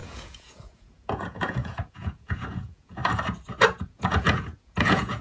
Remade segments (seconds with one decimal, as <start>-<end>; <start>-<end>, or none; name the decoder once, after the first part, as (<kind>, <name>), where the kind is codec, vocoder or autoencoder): 0.0-3.0 (vocoder, Vocos); 3.8-5.2